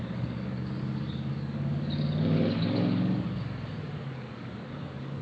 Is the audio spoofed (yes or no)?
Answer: yes